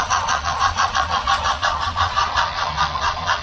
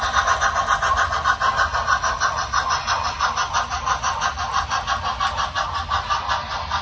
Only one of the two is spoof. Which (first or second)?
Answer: first